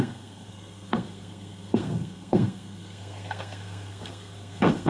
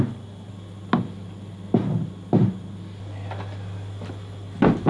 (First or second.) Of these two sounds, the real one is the second